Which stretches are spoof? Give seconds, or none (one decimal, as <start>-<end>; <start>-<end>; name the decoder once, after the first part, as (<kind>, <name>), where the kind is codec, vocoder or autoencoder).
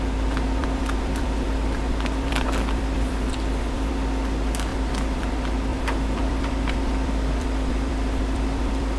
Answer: 0.6-3.9 (vocoder, BigVGAN v2); 4.7-5.3; 5.7-9.0